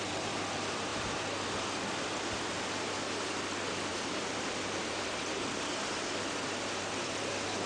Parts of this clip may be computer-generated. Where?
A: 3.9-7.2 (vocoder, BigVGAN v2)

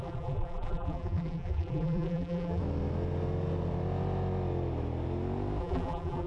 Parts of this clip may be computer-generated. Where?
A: 0.0-2.6 (vocoder, BigVGAN v2); 5.6-6.3

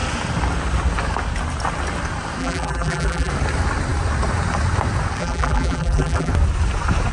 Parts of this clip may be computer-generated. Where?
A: 2.4-3.3 (vocoder, BigVGAN v2); 5.2-6.3

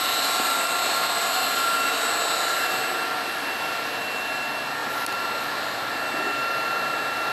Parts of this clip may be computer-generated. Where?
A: none

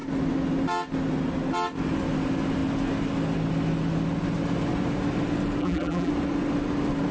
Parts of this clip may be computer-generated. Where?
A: 5.6-6.1 (vocoder, BigVGAN v2)

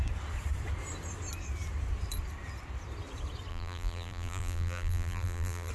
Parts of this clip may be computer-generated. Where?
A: 3.5-5.7 (vocoder, BigVGAN v2)

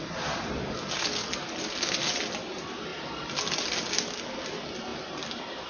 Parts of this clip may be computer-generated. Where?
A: none